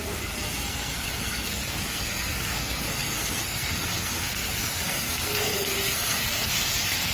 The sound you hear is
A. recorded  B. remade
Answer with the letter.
B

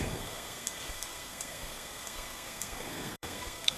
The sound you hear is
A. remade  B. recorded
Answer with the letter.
A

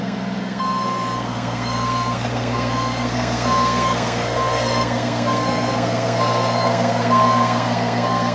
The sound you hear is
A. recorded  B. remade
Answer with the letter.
B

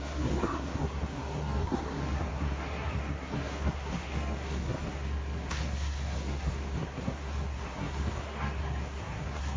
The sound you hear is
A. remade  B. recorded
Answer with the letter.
A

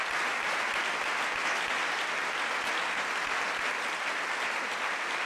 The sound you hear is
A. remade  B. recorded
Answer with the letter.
B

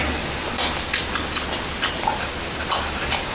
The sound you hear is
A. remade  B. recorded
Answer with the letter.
B